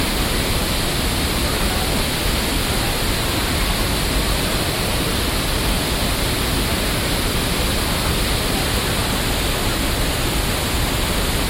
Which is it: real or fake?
real